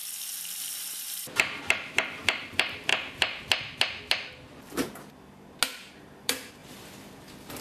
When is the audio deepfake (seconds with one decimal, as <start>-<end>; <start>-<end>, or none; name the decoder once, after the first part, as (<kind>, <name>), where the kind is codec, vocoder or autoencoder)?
0.0-2.9 (vocoder, BigVGAN v2); 6.0-7.6